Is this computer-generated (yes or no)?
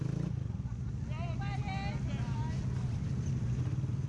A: no